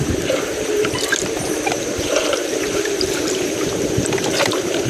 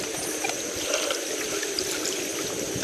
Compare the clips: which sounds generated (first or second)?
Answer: first